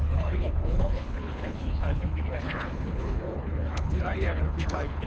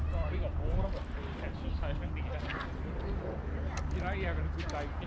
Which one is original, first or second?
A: second